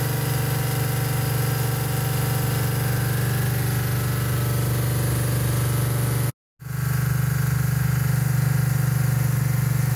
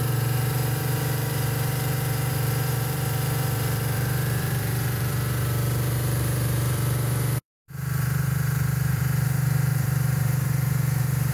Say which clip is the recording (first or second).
first